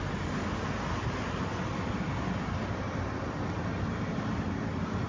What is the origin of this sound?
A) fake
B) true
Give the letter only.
B